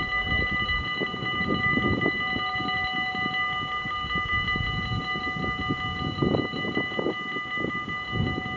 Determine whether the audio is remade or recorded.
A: recorded